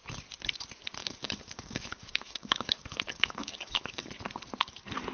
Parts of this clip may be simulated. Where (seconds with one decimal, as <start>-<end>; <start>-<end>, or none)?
1.0-4.1